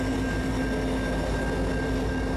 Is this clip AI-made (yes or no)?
no